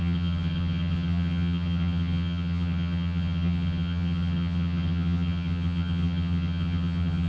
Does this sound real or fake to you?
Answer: fake